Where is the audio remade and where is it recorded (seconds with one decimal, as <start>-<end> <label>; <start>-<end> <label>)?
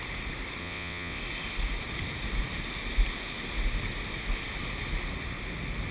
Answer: 0.0-0.6 recorded; 0.6-1.2 remade; 1.2-5.9 recorded